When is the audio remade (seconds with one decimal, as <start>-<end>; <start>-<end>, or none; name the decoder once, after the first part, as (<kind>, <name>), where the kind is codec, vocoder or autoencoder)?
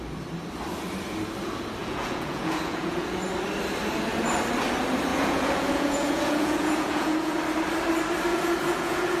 1.8-3.2 (vocoder, Vocos); 5.1-7.4; 8.3-9.2